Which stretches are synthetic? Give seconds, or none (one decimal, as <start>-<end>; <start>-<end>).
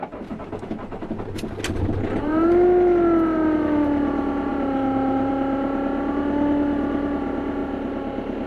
none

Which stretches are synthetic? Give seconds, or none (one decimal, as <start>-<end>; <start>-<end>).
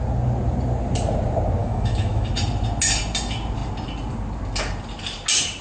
1.6-2.3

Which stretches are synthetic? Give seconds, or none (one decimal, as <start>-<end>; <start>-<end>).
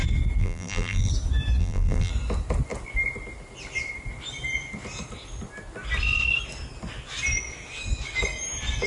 0.4-1.1; 1.6-2.1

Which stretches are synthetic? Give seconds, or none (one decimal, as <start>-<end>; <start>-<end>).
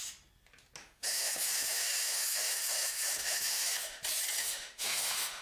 0.8-4.0; 4.4-5.4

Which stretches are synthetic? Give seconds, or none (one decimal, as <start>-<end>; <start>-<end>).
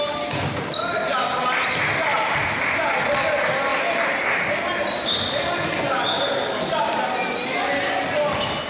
none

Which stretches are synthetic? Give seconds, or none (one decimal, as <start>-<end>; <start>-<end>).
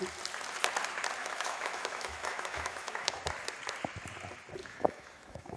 1.2-3.2; 4.6-5.6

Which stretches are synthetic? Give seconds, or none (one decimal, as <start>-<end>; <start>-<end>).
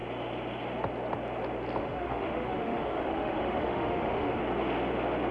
1.8-4.4